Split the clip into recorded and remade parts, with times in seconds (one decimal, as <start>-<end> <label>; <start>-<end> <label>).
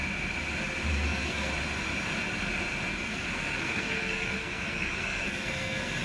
0.0-0.9 recorded; 0.9-1.5 remade; 1.5-2.9 recorded; 2.9-6.0 remade